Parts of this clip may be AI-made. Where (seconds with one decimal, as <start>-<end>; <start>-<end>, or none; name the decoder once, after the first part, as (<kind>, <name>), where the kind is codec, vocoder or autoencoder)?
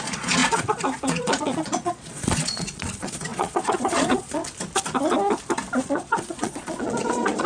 0.0-4.4 (vocoder, Vocos); 5.8-7.5